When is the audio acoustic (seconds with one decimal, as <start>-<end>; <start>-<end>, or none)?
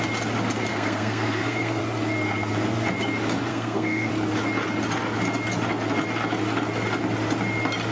0.0-0.7; 1.8-3.5; 4.1-7.9